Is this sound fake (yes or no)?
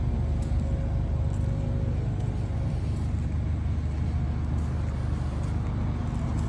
no